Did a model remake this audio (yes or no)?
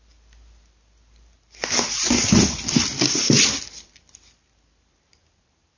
no